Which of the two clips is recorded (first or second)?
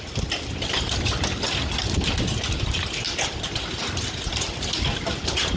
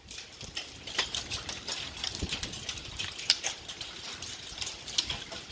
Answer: first